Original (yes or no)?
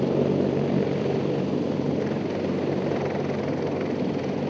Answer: yes